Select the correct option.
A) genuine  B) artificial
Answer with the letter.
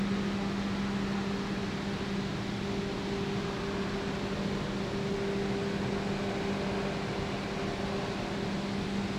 A